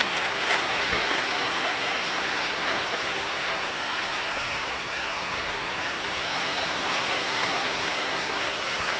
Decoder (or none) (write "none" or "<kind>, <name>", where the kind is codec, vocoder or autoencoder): codec, SNAC